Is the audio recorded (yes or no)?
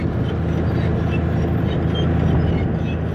yes